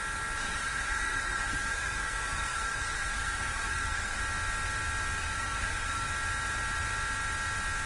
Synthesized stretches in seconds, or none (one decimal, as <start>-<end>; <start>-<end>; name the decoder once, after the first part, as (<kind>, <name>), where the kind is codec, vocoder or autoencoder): 0.4-4.2 (codec, SNAC); 5.2-6.1